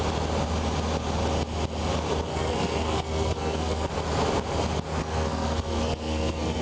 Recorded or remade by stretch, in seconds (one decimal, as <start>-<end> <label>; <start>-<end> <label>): 0.0-2.3 recorded; 2.3-3.9 remade; 3.9-5.0 recorded; 5.0-6.6 remade